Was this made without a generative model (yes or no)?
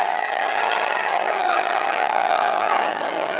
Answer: no